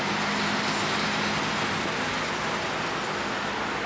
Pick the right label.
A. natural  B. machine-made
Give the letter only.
A